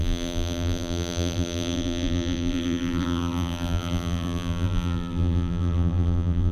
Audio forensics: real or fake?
fake